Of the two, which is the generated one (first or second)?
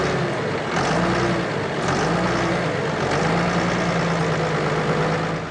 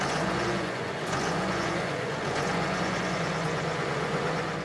second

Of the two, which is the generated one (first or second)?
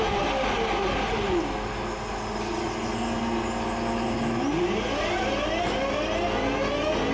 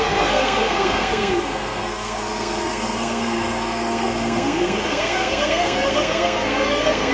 second